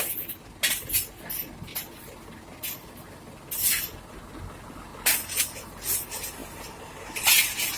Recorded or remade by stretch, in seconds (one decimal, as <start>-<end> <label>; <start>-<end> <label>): 0.0-7.8 recorded